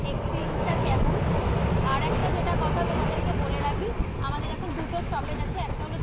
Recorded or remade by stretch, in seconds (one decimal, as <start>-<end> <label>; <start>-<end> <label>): 0.0-0.4 recorded; 0.4-1.3 remade; 1.3-6.0 recorded